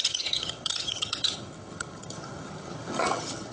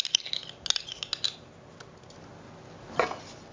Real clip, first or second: second